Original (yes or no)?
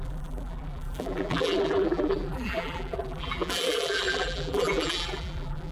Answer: no